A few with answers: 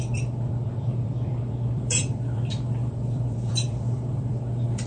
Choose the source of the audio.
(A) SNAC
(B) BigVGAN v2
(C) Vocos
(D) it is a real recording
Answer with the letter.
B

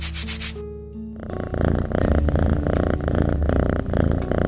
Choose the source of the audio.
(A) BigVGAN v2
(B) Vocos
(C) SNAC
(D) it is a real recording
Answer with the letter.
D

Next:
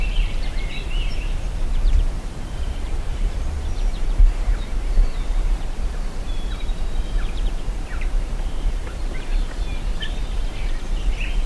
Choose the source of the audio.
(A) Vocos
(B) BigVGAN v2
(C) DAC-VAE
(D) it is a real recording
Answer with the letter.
B